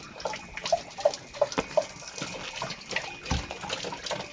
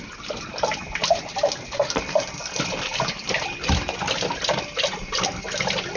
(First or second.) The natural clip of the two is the first